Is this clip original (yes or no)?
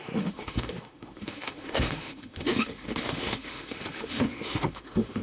no